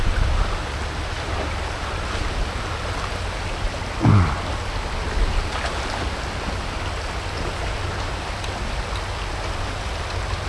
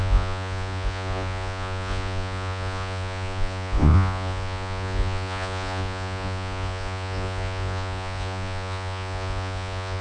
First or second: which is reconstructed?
second